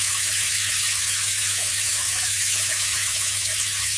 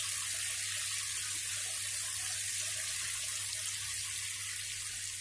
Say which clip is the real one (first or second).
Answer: second